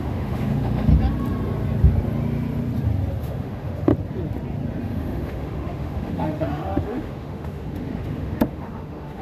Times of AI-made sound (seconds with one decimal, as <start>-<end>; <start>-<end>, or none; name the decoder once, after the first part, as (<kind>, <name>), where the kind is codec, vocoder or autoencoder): 0.0-0.9 (autoencoder, DAC-VAE); 3.2-3.9; 4.8-9.2